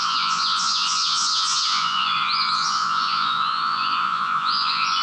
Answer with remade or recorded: remade